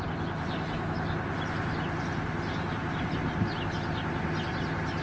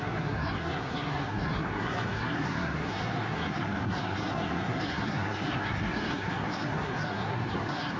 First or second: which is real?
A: first